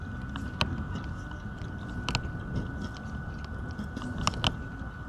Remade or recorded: recorded